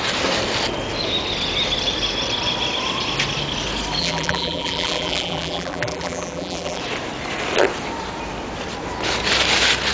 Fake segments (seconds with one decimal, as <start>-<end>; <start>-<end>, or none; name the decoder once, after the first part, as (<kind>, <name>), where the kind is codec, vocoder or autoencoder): 4.0-6.8 (vocoder, BigVGAN v2)